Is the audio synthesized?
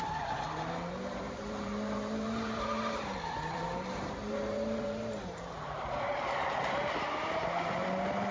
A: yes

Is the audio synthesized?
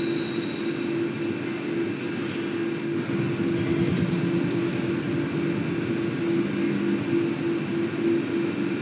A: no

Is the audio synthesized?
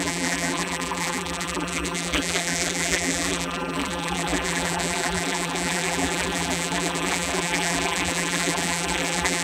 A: yes